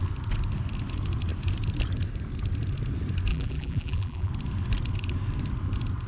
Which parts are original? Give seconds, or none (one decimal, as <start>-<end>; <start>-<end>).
0.0-3.3; 4.3-6.1